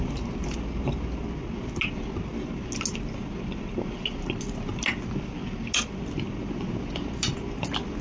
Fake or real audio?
real